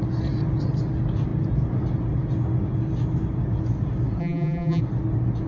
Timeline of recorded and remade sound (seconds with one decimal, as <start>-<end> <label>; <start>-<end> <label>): 0.0-4.2 recorded; 4.2-4.8 remade; 4.8-5.5 recorded

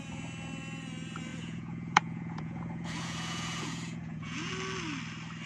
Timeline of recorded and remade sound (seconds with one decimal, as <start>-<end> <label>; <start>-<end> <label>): 0.0-1.3 recorded; 1.3-4.5 remade; 4.5-5.5 recorded

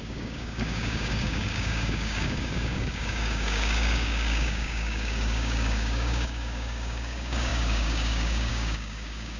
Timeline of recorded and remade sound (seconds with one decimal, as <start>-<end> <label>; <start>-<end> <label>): 0.0-9.4 remade

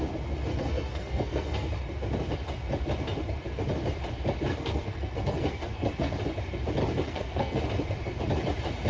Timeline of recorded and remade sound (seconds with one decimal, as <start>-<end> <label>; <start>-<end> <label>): 0.0-0.5 recorded; 0.5-1.7 remade; 1.7-4.5 recorded; 4.5-6.2 remade; 6.2-6.8 recorded; 6.8-7.6 remade; 7.6-8.9 recorded

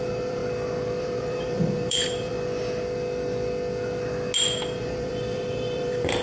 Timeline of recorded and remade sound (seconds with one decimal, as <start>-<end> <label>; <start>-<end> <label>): 0.0-0.4 remade; 0.4-1.0 recorded; 1.0-2.3 remade; 2.3-4.8 recorded; 4.8-6.2 remade

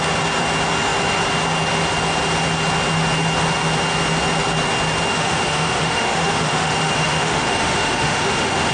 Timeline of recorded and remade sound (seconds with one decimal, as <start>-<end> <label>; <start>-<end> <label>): 0.0-5.1 recorded; 5.1-8.7 remade